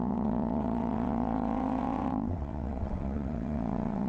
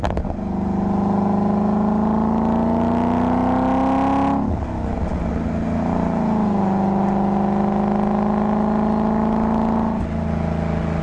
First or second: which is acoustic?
second